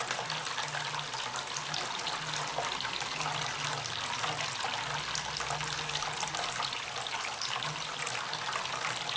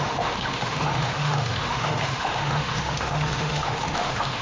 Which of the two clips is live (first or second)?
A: first